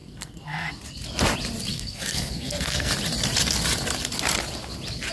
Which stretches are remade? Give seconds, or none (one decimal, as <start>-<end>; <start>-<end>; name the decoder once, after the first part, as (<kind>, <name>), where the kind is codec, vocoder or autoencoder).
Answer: 0.0-0.7 (codec, SNAC); 1.7-2.9